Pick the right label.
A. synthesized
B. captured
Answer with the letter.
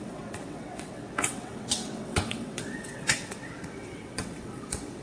A